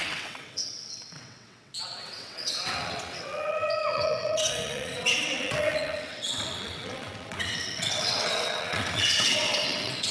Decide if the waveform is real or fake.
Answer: fake